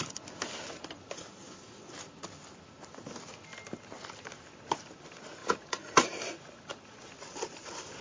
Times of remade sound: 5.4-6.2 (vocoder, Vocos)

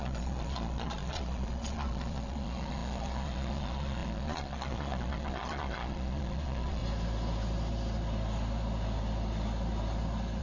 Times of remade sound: 0.0-6.8 (vocoder, Vocos)

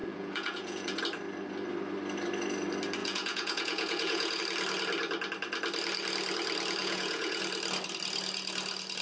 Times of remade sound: 0.0-1.0 (vocoder, Vocos); 3.0-4.4; 6.8-7.4

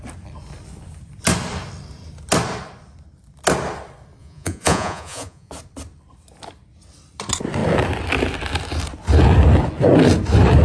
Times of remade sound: 4.2-5.5 (vocoder, Vocos)

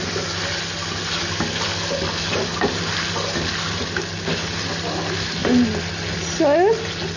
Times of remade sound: none

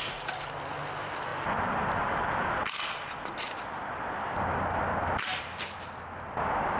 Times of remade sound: none

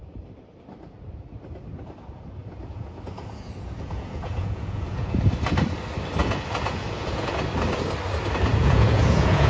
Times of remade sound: 2.4-5.2 (vocoder, Vocos); 6.2-7.4; 8.5-9.5